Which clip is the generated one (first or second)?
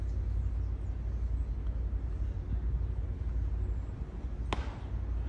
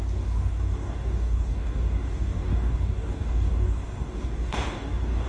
second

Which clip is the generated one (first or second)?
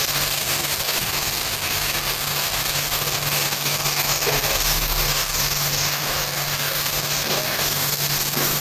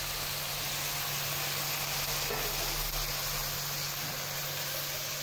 first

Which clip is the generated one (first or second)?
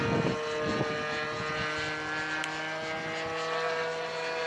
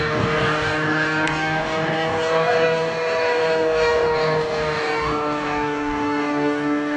second